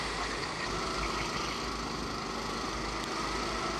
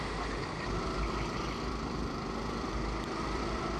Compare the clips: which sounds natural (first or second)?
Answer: first